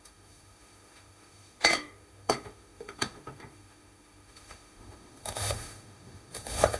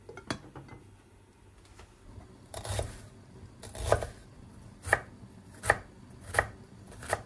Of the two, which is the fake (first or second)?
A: first